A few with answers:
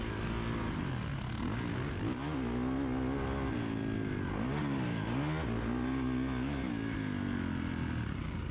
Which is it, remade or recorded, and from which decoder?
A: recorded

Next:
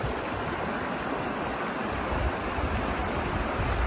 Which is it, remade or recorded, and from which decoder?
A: recorded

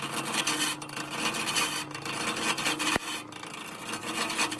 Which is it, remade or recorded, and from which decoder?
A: recorded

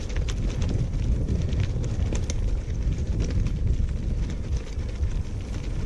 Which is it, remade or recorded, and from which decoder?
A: recorded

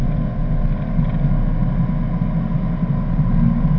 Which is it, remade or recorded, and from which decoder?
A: recorded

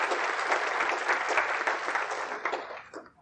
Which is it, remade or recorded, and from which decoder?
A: recorded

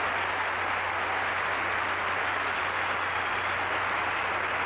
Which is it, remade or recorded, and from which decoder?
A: recorded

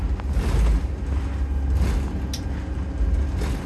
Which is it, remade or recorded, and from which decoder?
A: recorded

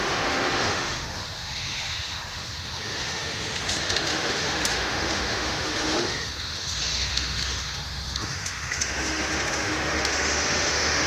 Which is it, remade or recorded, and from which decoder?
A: remade, autoencoder, DAC-VAE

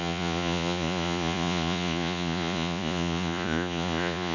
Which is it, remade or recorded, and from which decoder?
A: remade, vocoder, Vocos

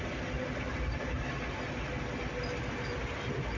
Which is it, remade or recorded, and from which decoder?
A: recorded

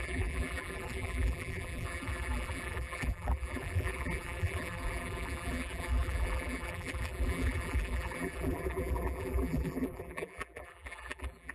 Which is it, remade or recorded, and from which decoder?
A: remade, vocoder, BigVGAN v2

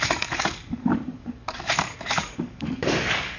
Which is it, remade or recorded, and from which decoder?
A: remade, codec, DAC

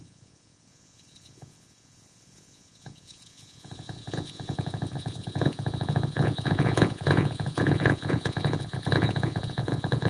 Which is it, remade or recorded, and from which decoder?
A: remade, vocoder, Vocos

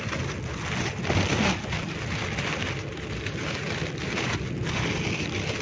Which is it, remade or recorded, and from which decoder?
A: recorded